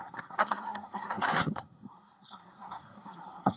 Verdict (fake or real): fake